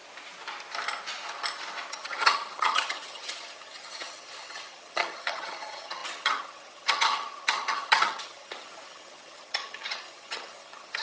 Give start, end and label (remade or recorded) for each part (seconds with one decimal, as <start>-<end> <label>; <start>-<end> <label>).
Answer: 0.0-1.9 recorded; 1.9-11.0 remade